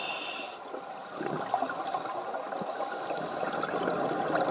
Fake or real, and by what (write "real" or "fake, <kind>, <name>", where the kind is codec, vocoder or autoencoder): real